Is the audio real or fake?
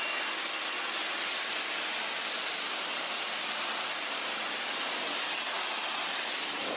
real